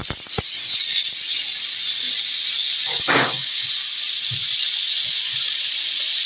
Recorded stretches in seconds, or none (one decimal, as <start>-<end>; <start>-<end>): 0.0-2.9; 3.7-6.3